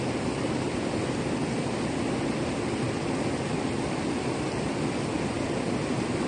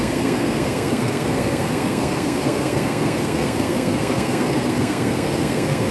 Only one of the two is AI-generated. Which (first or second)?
second